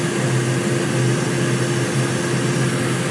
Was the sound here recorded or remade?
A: recorded